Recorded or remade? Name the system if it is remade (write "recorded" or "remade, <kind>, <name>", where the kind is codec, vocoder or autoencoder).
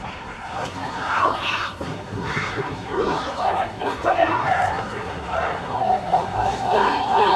remade, codec, SNAC